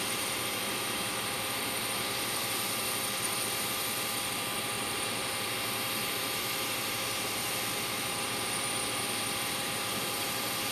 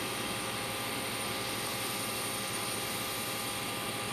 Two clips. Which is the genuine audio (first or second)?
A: second